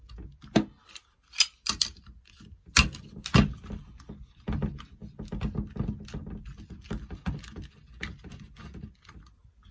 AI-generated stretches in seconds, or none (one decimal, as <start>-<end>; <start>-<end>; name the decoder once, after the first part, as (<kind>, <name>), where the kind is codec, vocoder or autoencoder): none